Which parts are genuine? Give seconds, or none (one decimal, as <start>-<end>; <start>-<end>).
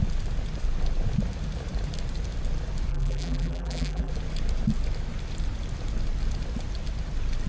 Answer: 0.0-2.9; 4.1-7.5